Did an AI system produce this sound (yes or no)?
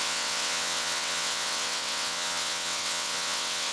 yes